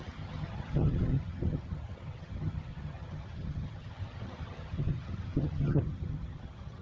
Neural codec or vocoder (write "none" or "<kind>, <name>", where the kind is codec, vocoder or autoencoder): vocoder, HiFi-GAN